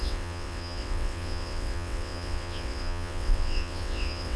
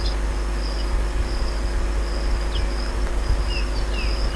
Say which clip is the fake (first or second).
first